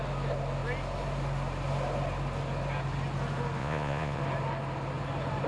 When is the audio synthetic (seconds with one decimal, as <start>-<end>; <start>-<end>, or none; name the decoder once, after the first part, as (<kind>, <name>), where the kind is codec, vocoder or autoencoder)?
3.6-4.2 (vocoder, Vocos)